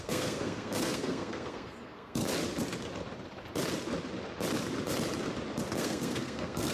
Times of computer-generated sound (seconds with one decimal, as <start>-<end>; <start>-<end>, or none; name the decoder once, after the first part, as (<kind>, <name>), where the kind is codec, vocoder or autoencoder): 0.0-2.2 (codec, SNAC); 5.8-6.7